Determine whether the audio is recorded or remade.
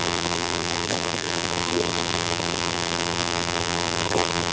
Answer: remade